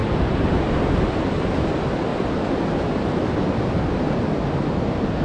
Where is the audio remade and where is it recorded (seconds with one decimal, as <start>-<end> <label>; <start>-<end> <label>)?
0.0-1.1 remade; 1.1-2.1 recorded; 2.1-4.0 remade; 4.0-5.2 recorded

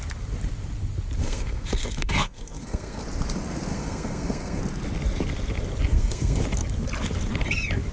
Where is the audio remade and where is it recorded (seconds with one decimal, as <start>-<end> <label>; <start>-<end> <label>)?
0.0-1.2 recorded; 1.2-3.0 remade; 3.0-3.7 recorded; 3.7-4.6 remade; 4.6-5.9 recorded; 5.9-6.4 remade; 6.4-7.9 recorded

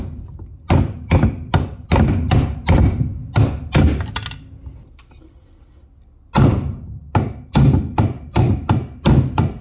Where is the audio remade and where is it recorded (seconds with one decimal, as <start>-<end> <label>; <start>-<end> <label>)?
0.0-9.6 recorded

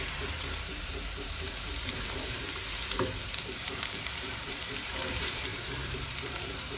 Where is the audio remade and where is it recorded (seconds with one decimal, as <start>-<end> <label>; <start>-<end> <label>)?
0.0-2.6 remade; 2.6-3.5 recorded; 3.5-6.8 remade

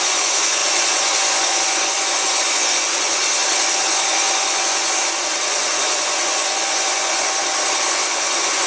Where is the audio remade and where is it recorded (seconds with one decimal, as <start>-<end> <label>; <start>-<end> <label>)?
0.0-3.2 remade; 3.2-3.9 recorded; 3.9-7.4 remade; 7.4-7.9 recorded; 7.9-8.7 remade

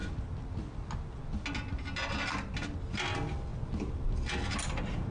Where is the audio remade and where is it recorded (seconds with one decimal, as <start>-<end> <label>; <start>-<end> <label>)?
0.0-5.1 recorded